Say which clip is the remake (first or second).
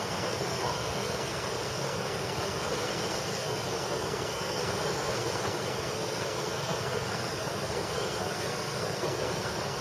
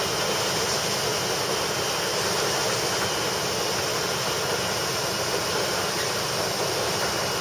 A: first